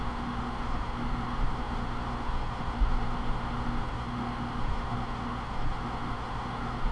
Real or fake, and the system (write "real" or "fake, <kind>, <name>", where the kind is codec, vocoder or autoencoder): fake, autoencoder, DAC-VAE